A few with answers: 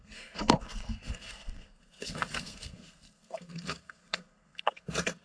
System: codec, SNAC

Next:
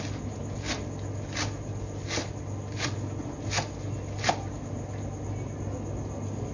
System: none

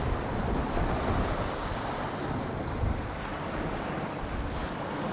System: vocoder, BigVGAN v2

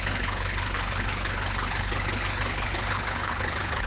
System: codec, HILCodec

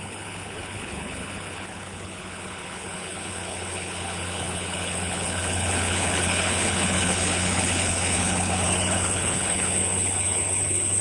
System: codec, HILCodec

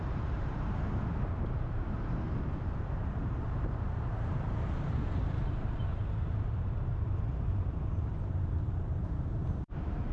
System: vocoder, BigVGAN v2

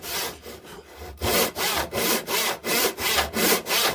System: none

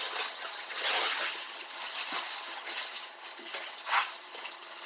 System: vocoder, HiFi-GAN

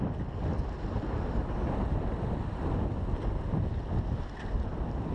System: none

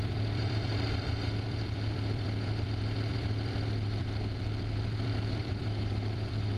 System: vocoder, BigVGAN v2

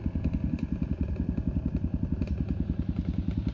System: none